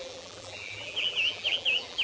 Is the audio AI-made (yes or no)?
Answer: yes